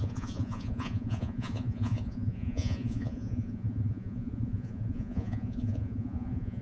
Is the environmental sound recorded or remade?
remade